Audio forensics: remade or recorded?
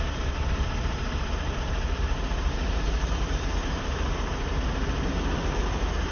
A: remade